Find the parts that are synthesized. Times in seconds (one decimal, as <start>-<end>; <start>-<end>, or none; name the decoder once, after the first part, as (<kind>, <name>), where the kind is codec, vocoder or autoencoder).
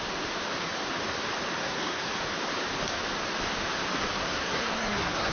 1.6-2.1 (codec, SNAC); 4.2-5.3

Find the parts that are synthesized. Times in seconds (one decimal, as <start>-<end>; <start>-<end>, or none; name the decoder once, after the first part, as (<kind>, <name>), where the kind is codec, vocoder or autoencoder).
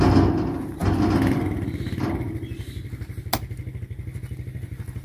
none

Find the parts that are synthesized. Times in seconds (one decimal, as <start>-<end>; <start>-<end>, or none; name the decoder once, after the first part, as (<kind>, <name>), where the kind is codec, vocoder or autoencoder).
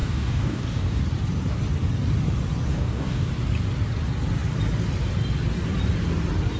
0.0-1.0 (codec, DAC); 2.7-3.3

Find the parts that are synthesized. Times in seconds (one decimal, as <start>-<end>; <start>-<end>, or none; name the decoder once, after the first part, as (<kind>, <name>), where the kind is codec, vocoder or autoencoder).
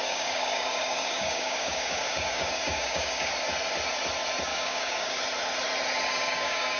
0.0-3.3 (codec, DAC); 4.5-5.2; 6.1-6.8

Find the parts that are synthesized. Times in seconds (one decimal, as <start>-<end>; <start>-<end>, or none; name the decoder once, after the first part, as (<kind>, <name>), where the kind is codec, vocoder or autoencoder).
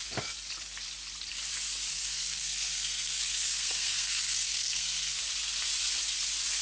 1.9-5.2 (codec, SNAC)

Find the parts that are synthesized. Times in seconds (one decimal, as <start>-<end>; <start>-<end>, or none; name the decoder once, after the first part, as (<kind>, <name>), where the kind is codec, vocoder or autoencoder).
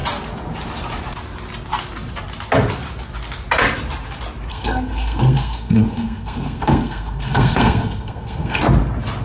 4.5-8.6 (codec, SNAC)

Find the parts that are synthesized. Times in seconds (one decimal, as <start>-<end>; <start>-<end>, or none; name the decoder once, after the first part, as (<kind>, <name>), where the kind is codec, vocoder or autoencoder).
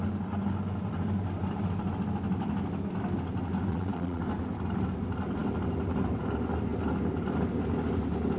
3.7-4.2 (vocoder, WaveNeXt)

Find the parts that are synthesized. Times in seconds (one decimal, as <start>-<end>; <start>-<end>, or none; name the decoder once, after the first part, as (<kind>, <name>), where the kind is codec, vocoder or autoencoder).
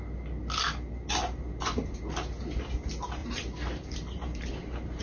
3.2-4.4 (vocoder, BigVGAN v2)